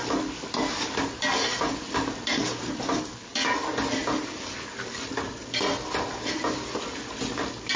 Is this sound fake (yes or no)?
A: no